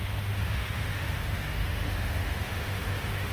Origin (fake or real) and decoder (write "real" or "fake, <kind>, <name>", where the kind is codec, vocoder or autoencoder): fake, autoencoder, DAC-VAE